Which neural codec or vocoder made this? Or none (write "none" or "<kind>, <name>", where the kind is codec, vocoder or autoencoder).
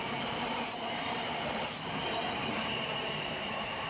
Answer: vocoder, BigVGAN v2